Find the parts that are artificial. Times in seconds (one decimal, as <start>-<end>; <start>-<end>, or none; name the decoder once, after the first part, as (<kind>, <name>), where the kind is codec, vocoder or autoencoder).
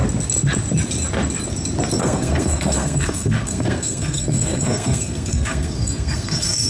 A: 2.0-6.7 (codec, SNAC)